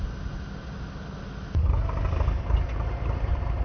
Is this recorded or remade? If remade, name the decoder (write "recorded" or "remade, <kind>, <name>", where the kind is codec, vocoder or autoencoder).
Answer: recorded